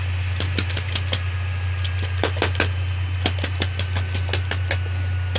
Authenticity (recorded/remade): recorded